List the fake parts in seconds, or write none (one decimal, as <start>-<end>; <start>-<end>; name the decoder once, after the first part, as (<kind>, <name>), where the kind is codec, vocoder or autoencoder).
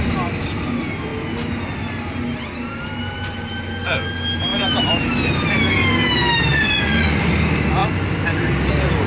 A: 6.5-7.3 (vocoder, Vocos)